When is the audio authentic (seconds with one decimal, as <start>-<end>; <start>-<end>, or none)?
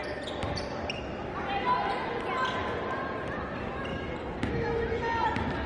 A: 0.0-5.7